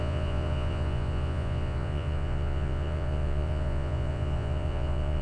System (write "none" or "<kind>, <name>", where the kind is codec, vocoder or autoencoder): vocoder, Vocos